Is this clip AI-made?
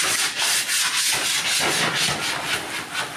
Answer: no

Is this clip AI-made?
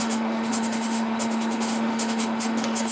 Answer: yes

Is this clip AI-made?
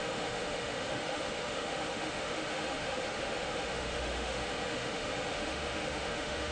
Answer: yes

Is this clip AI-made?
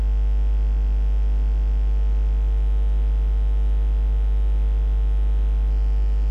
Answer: no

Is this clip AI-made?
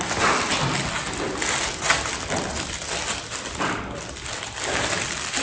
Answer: no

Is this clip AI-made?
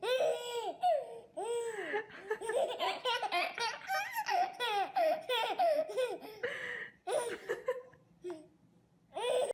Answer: no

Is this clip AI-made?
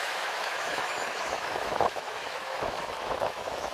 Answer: yes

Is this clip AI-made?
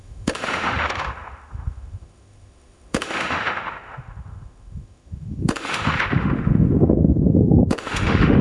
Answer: yes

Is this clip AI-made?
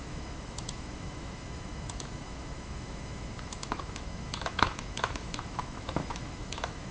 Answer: yes